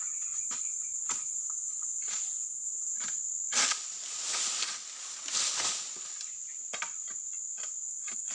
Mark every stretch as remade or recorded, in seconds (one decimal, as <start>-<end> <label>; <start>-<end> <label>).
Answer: 0.0-2.9 remade; 2.9-7.9 recorded; 7.9-8.3 remade